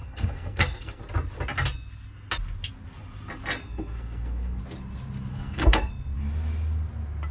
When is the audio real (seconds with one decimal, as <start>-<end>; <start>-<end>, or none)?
1.0-3.6; 4.6-5.3; 5.9-7.3